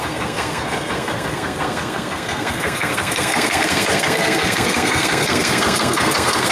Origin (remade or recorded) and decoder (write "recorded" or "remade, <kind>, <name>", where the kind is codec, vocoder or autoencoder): remade, codec, SNAC